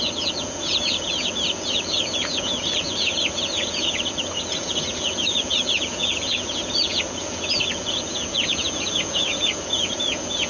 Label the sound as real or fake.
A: fake